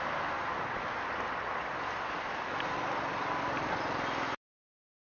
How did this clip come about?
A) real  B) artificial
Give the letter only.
A